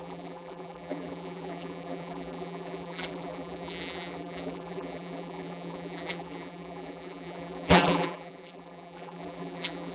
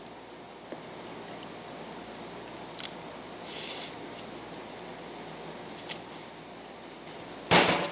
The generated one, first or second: first